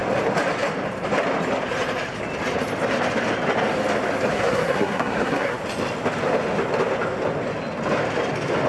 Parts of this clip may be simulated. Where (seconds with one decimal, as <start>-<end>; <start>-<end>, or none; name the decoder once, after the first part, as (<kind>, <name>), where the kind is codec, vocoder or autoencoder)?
4.3-5.6 (codec, SNAC)

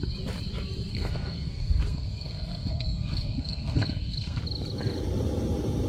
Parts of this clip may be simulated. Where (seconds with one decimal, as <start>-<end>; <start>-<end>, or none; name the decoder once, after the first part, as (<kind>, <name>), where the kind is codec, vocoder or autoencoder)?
0.9-4.4 (codec, SNAC)

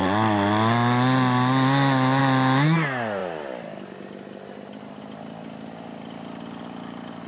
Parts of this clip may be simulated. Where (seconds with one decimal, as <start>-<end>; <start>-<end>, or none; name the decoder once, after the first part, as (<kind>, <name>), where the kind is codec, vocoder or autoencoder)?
none